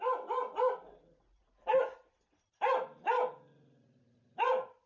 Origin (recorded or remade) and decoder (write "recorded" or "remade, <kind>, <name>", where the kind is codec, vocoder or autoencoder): recorded